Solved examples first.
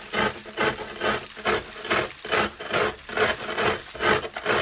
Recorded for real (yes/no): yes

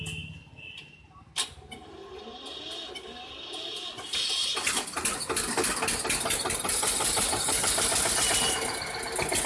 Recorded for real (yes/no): yes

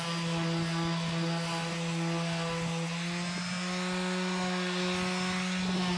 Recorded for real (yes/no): yes